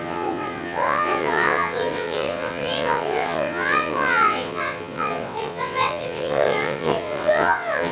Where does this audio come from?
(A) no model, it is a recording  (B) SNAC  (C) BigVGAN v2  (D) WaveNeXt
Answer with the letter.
D